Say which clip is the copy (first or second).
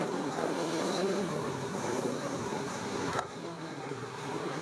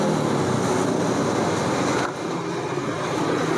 first